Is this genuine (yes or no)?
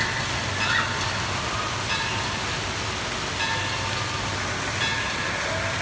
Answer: yes